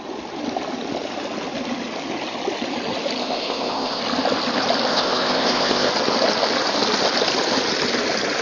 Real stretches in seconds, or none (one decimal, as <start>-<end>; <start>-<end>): 0.0-3.2; 4.0-4.9; 5.9-8.4